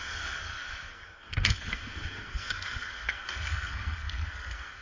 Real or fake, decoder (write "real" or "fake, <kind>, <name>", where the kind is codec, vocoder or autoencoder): fake, codec, SNAC